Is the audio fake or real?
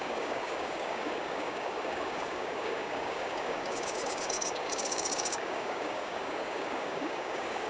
fake